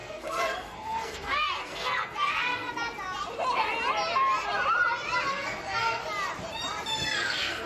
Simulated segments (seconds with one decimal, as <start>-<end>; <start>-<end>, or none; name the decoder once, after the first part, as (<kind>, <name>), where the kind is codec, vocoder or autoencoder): 0.0-2.7 (codec, SNAC); 5.3-6.0; 6.9-7.7